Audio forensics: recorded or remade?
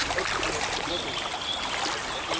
recorded